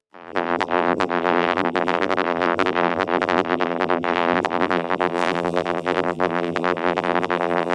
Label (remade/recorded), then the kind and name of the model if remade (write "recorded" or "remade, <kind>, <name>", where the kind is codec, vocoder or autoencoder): remade, vocoder, BigVGAN v2